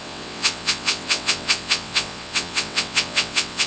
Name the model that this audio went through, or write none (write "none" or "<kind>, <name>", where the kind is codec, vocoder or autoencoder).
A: vocoder, WaveNeXt